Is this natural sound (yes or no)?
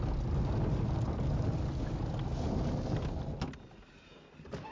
yes